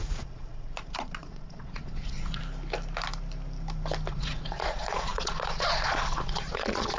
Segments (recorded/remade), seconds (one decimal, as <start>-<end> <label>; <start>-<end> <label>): 0.0-2.4 remade; 2.4-4.1 recorded; 4.1-7.0 remade